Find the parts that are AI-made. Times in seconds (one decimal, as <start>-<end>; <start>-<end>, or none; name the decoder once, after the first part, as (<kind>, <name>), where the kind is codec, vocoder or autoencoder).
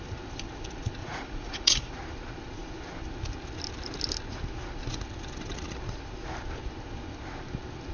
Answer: 1.0-1.9 (vocoder, Vocos)